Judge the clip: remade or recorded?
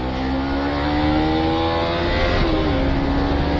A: recorded